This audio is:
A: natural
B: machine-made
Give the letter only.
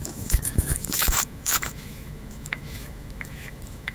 B